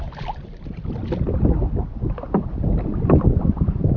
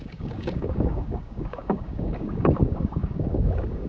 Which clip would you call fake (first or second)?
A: second